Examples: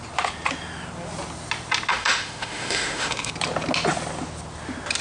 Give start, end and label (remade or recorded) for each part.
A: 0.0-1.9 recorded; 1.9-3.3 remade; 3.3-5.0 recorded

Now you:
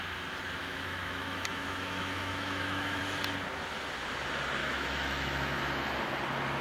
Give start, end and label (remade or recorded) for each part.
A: 0.0-0.6 recorded; 0.6-3.0 remade; 3.0-4.6 recorded; 4.6-5.6 remade; 5.6-6.6 recorded